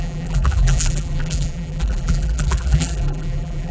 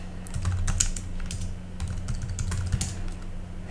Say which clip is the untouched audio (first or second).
second